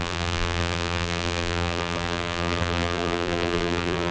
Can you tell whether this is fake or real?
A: fake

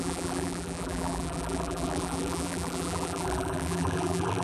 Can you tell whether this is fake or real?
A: fake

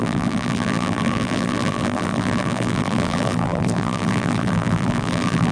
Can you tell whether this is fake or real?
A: fake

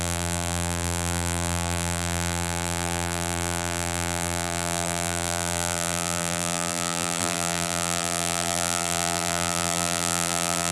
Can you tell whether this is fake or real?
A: fake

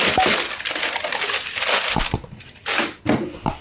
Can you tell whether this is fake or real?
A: real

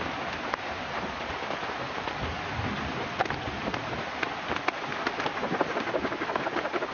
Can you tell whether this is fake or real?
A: real